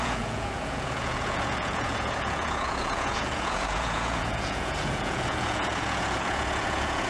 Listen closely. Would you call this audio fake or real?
fake